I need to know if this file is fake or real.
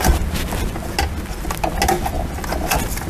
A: real